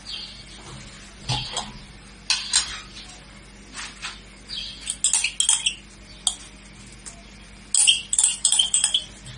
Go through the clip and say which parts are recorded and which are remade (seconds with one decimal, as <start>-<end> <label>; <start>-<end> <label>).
0.0-8.0 recorded; 8.0-9.0 remade; 9.0-9.4 recorded